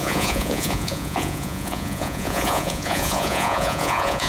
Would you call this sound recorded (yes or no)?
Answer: no